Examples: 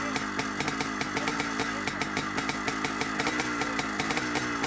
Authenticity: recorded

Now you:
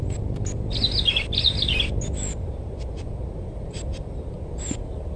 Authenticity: recorded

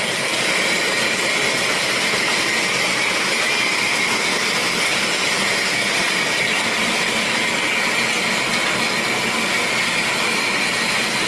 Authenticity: recorded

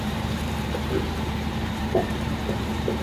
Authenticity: remade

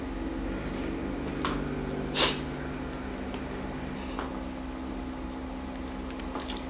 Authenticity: recorded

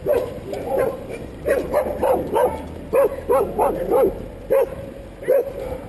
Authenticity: recorded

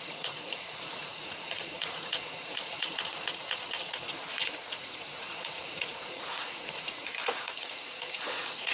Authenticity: remade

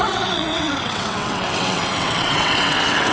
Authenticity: remade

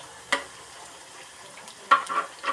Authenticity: recorded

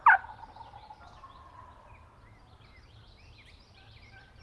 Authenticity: recorded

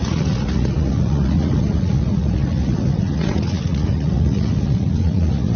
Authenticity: remade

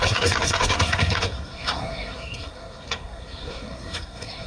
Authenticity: remade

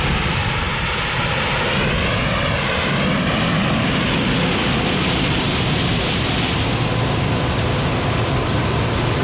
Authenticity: recorded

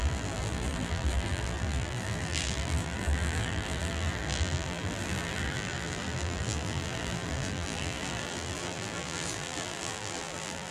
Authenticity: remade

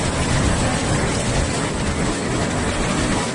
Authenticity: recorded